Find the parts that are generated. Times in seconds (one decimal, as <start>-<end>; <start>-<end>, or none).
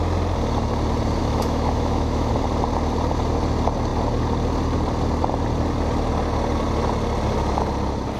1.2-2.3